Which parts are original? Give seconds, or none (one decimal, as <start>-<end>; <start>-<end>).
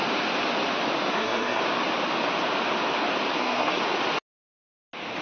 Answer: 0.0-1.1; 1.6-3.3; 3.8-5.2